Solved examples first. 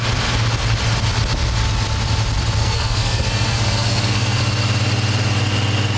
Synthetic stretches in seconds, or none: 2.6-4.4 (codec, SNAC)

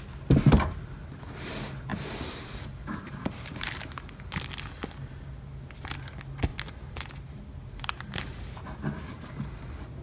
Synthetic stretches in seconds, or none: 1.9-3.7 (vocoder, BigVGAN v2); 6.5-9.3

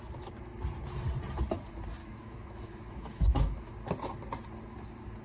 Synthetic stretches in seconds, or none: 2.0-3.7 (autoencoder, DAC-VAE)

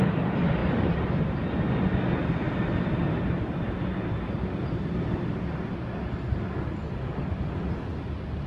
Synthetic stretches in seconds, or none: 2.2-3.0 (vocoder, BigVGAN v2)

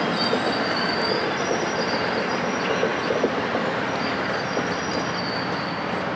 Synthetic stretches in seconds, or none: none

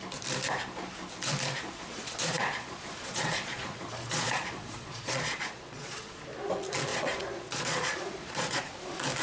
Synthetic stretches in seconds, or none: 1.6-6.2 (vocoder, Vocos); 6.9-8.6

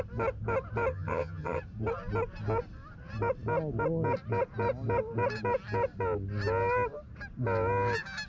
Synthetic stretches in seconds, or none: 0.9-1.6 (vocoder, HiFi-GAN)

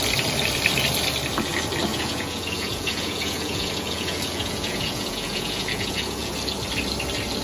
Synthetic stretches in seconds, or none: 1.9-6.3 (vocoder, Vocos)